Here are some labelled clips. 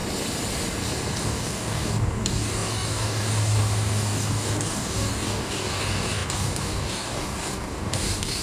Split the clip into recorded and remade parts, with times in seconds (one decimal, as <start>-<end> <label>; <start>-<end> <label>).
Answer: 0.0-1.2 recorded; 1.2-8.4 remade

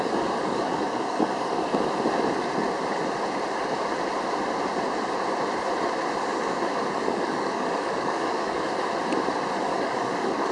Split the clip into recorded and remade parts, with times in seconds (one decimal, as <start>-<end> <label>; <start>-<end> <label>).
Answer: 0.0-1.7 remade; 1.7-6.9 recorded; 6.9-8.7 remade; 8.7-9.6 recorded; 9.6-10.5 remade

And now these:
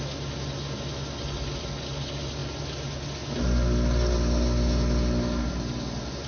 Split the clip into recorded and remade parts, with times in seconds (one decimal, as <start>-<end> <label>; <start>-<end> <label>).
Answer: 0.0-6.3 recorded

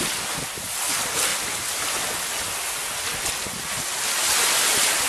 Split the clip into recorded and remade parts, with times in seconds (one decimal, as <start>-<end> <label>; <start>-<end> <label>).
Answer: 0.0-5.1 recorded

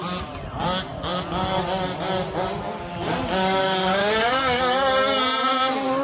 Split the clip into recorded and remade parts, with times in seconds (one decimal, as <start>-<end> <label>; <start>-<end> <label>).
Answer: 0.0-4.0 recorded; 4.0-4.6 remade; 4.6-6.0 recorded

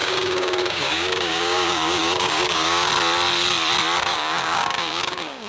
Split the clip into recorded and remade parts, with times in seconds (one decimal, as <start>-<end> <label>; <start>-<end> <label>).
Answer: 0.0-2.9 remade; 2.9-4.0 recorded; 4.0-5.5 remade

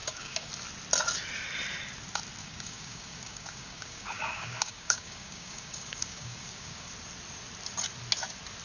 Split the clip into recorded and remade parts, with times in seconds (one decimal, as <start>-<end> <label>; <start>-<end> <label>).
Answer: 0.0-0.5 remade; 0.5-2.4 recorded; 2.4-6.9 remade; 6.9-8.6 recorded